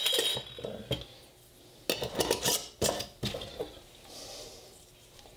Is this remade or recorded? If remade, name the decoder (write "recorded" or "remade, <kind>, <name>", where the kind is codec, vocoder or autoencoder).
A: recorded